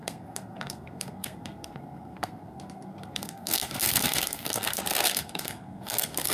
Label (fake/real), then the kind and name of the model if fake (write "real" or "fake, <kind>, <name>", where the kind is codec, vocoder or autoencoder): fake, codec, SNAC